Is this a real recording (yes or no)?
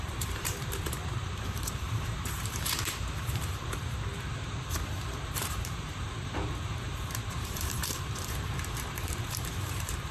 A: no